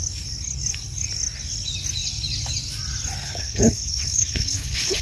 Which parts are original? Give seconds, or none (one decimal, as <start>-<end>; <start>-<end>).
0.0-3.2